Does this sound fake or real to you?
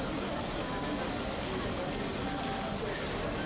real